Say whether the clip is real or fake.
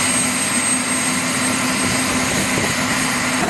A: real